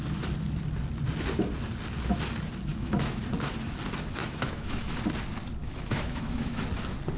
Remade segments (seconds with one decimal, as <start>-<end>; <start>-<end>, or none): 2.7-3.2; 4.2-4.9; 5.6-6.6